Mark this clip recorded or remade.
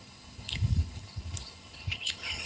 remade